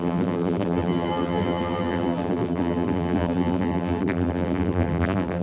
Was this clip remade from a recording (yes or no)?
yes